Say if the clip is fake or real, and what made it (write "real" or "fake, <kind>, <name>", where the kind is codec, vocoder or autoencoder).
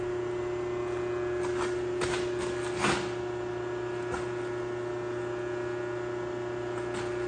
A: real